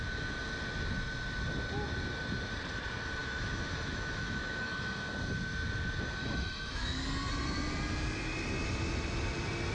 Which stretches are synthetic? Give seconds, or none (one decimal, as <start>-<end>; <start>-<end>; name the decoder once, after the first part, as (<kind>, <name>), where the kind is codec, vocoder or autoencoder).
3.2-4.7 (autoencoder, DAC-VAE); 6.2-7.0